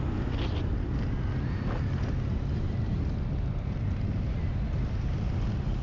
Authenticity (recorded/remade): recorded